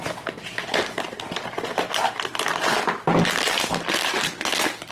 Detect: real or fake real